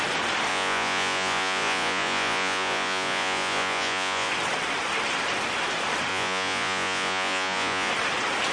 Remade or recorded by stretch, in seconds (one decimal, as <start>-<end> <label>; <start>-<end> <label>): 0.0-0.5 recorded; 0.5-4.3 remade; 4.3-6.1 recorded; 6.1-7.9 remade; 7.9-8.5 recorded

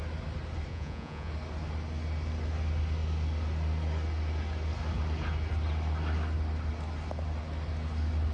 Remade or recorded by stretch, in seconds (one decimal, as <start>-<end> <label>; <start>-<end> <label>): 0.0-0.7 recorded; 0.7-1.3 remade; 1.3-8.3 recorded

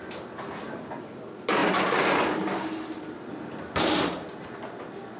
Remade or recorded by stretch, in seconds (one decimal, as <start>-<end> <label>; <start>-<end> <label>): 0.0-5.2 recorded

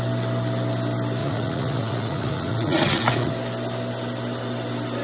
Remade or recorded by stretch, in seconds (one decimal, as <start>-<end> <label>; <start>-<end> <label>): 0.0-1.2 recorded; 1.2-3.3 remade; 3.3-5.0 recorded

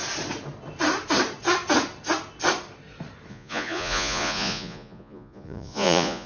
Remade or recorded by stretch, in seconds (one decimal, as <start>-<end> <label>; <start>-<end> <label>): 0.0-3.3 recorded; 3.3-6.3 remade

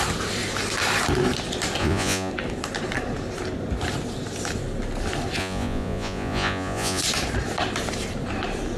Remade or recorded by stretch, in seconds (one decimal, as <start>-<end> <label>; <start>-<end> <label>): 0.0-1.8 recorded; 1.8-2.3 remade; 2.3-5.4 recorded; 5.4-7.0 remade; 7.0-8.8 recorded

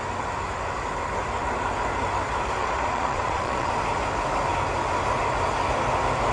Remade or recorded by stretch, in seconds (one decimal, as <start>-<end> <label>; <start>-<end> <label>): 0.0-2.6 recorded; 2.6-3.7 remade; 3.7-6.3 recorded